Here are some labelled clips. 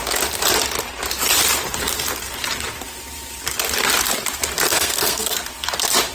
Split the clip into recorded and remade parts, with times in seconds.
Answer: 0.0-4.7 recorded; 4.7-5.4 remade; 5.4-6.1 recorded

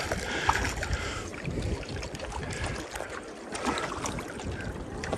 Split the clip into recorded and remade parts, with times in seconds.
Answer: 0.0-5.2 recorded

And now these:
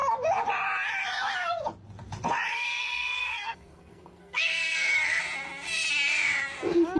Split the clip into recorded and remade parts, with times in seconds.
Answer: 0.0-2.5 recorded; 2.5-5.2 remade; 5.2-7.0 recorded

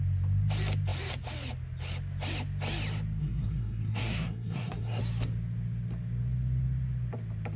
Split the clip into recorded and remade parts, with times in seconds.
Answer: 0.0-3.2 recorded; 3.2-5.0 remade; 5.0-7.6 recorded

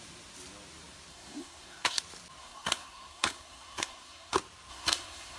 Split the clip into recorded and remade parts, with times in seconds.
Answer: 0.0-1.1 recorded; 1.1-2.0 remade; 2.0-2.4 recorded; 2.4-4.3 remade; 4.3-4.7 recorded; 4.7-5.4 remade

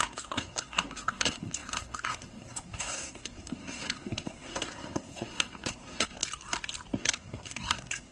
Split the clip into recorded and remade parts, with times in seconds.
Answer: 0.0-6.2 remade; 6.2-7.0 recorded; 7.0-8.1 remade